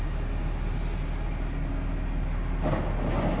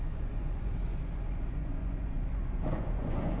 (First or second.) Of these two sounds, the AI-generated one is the second